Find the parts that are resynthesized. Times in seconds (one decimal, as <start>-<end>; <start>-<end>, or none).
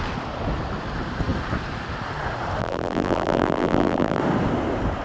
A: 2.6-4.2